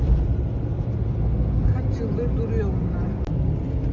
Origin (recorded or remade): recorded